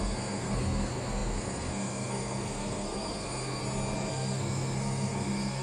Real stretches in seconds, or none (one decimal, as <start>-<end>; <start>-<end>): 3.6-4.1